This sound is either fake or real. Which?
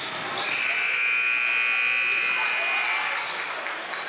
real